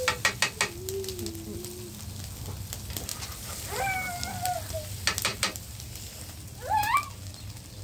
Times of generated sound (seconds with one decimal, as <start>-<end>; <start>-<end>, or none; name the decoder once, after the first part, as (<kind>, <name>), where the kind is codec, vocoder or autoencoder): 3.1-3.7 (vocoder, BigVGAN v2); 5.3-5.9